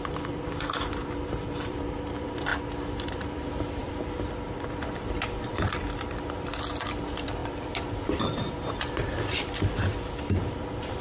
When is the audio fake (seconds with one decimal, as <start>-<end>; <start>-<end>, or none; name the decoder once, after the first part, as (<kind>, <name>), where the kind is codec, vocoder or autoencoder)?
0.0-2.5 (vocoder, BigVGAN v2); 3.1-11.0